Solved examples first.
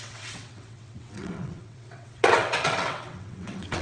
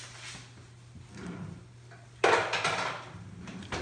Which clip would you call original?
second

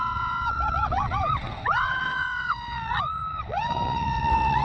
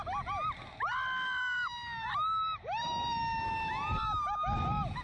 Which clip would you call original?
second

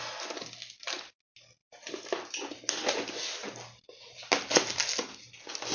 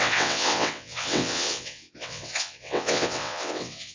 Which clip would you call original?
first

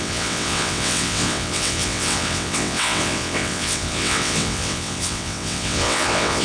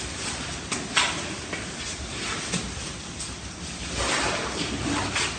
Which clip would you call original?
second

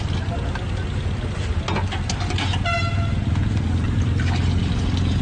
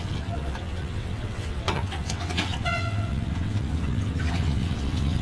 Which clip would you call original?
first